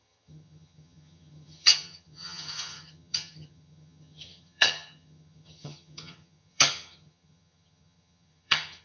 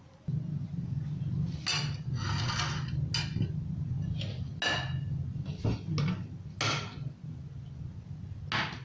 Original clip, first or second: second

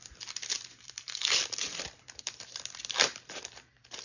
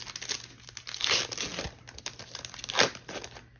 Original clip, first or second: second